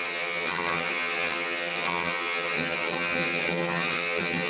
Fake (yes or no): yes